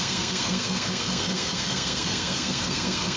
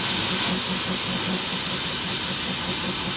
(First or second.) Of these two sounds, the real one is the second